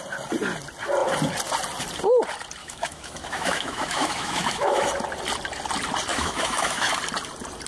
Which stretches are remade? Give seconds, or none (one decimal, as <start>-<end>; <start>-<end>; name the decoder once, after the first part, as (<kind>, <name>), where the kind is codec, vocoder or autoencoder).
2.6-4.9 (autoencoder, DAC-VAE); 6.1-6.9